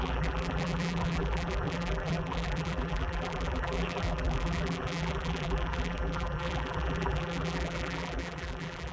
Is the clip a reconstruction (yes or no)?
yes